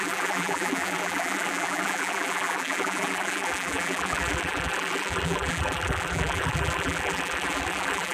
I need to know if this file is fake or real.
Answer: fake